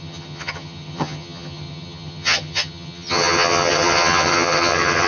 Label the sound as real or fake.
fake